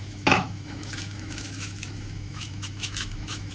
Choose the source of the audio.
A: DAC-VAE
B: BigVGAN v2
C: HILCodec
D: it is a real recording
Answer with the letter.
A